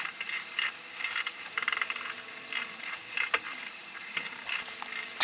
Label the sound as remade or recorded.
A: remade